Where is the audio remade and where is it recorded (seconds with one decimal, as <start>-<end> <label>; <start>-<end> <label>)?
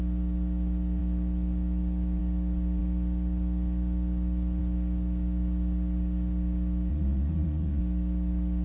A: 0.0-6.9 recorded; 6.9-7.8 remade; 7.8-8.6 recorded